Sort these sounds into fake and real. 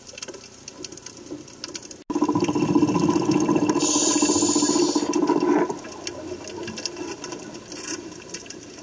real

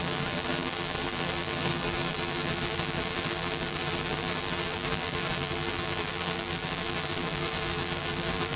fake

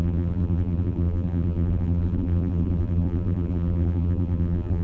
fake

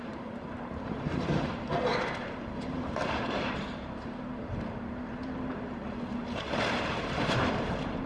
fake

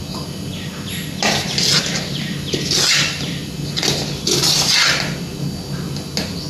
real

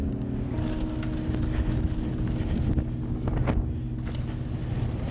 real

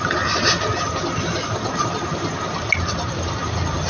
real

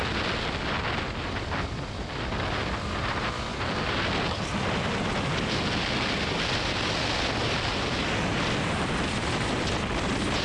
real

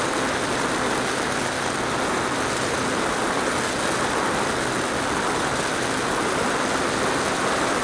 real